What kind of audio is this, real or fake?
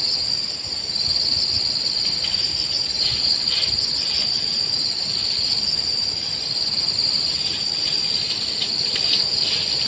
real